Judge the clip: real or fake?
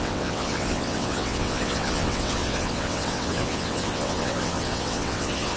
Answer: fake